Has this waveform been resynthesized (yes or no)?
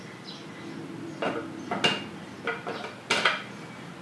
no